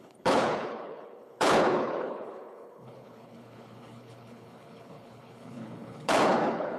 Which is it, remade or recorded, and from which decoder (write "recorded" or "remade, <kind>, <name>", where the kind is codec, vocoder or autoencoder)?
remade, codec, HILCodec